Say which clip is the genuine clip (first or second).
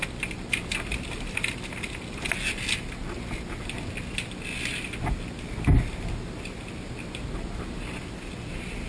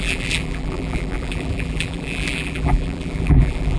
first